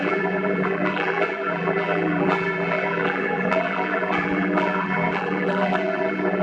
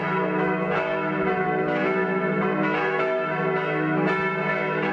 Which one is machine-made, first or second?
first